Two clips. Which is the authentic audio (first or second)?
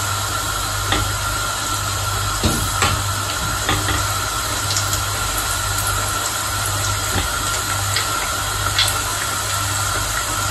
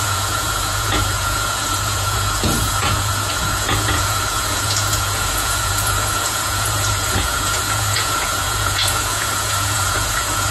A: first